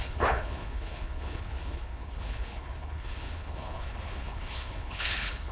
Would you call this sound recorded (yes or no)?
no